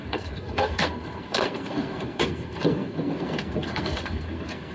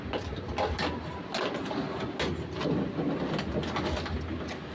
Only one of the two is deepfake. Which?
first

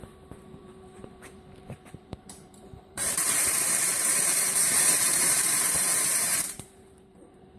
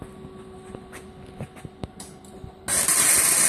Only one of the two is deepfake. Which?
first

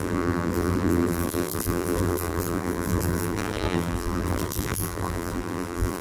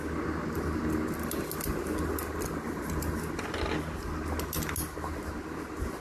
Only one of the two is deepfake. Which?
first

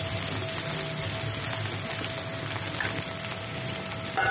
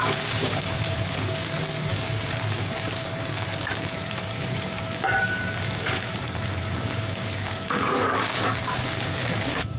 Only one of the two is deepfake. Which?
second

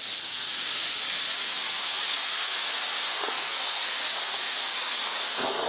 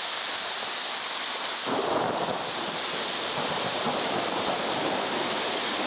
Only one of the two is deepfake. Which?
first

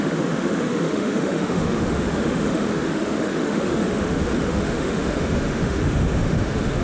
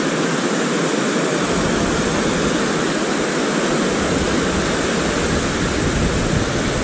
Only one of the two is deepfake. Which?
first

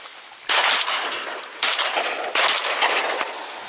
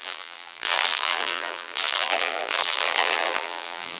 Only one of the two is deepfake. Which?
second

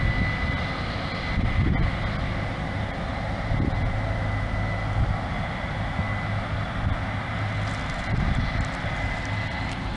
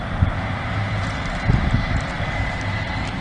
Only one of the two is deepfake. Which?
second